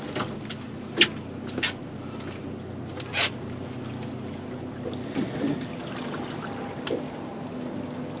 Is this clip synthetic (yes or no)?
no